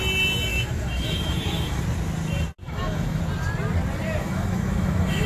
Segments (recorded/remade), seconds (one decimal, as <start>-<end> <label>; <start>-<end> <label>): 0.0-0.5 recorded; 0.5-1.8 remade; 1.8-2.6 recorded; 2.6-3.2 remade; 3.2-4.2 recorded; 4.2-5.3 remade